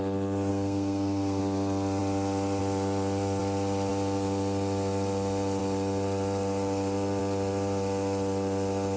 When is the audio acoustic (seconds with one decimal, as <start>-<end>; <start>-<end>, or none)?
0.0-0.5; 1.4-9.0